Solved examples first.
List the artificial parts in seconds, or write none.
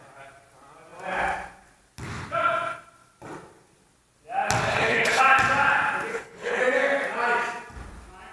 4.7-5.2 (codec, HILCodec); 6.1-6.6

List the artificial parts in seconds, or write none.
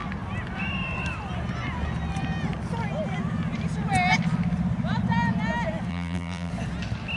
5.9-6.5 (vocoder, BigVGAN v2)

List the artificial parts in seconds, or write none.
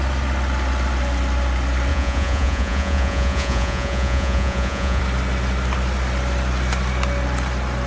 1.9-5.0 (vocoder, Vocos)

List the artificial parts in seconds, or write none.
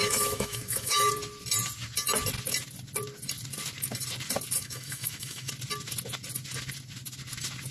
0.0-1.1 (autoencoder, DAC-VAE); 4.6-5.5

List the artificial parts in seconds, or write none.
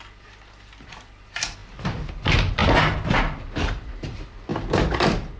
0.0-2.6 (vocoder, BigVGAN v2); 3.6-4.5; 5.0-5.4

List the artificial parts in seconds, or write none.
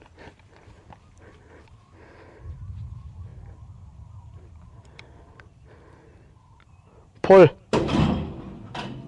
0.0-9.1 (vocoder, BigVGAN v2)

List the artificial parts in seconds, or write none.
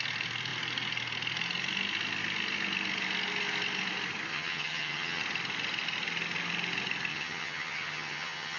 4.3-5.2 (vocoder, HiFi-GAN); 7.1-8.6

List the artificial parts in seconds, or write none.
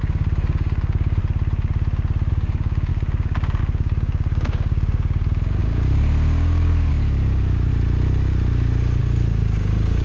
0.0-1.2 (codec, DAC); 2.3-7.7; 9.0-10.0